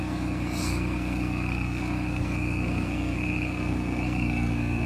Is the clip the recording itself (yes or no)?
no